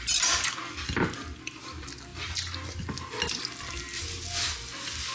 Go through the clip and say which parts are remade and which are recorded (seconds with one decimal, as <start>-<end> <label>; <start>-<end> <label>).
0.0-5.1 recorded